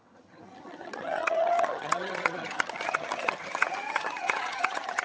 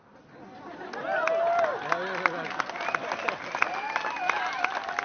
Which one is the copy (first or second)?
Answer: first